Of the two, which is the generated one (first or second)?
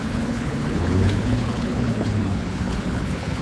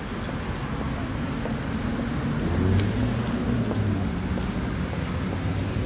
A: first